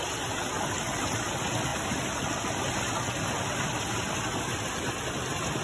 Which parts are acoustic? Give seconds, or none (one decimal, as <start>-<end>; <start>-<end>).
0.0-5.6